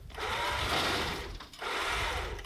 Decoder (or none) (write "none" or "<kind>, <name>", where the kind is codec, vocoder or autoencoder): vocoder, BigVGAN v2